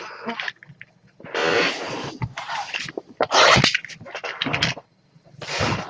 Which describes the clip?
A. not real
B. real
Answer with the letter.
B